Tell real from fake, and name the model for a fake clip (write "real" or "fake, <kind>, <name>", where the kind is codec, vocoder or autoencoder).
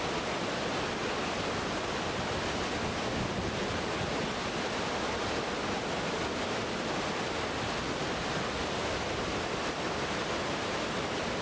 real